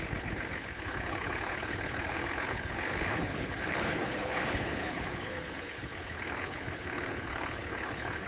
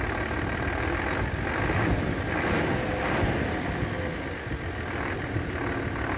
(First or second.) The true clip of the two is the second